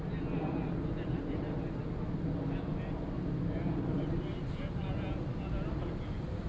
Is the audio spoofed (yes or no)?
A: no